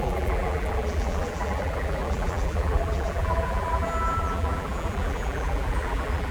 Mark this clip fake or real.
fake